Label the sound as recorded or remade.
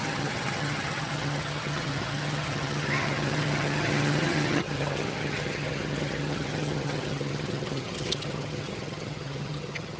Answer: remade